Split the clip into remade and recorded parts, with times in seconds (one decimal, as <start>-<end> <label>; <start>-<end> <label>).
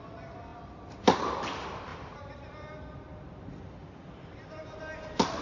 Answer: 0.0-1.9 recorded; 1.9-2.7 remade; 2.7-3.8 recorded; 3.8-4.5 remade; 4.5-5.4 recorded